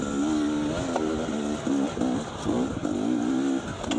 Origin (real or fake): real